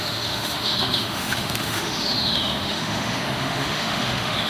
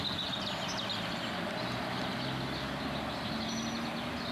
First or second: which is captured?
second